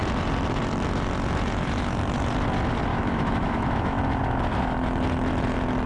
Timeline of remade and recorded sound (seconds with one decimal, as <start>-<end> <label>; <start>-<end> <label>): 0.0-2.9 recorded; 2.9-4.0 remade; 4.0-5.9 recorded